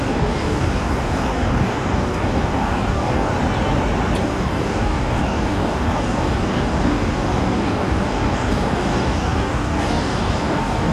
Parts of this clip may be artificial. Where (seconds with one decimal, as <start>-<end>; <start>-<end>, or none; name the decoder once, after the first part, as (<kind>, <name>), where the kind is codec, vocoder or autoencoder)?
0.0-3.3 (codec, DAC); 4.2-10.9